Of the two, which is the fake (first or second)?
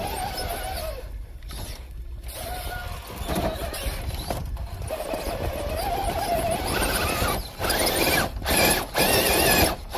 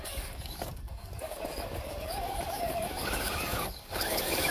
second